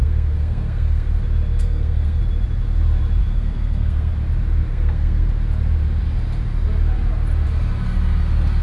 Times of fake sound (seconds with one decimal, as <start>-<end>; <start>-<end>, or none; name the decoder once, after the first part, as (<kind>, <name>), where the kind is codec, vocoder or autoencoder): 0.0-1.1 (codec, SNAC); 1.6-2.2; 3.2-4.1; 4.7-5.3